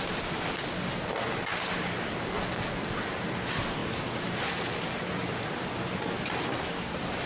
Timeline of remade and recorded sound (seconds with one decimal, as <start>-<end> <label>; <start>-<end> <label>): 0.0-7.3 recorded